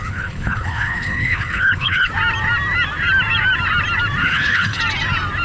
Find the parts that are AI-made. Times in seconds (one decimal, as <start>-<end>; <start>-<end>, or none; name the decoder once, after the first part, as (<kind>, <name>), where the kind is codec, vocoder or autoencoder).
0.0-2.1 (codec, HILCodec); 4.2-4.8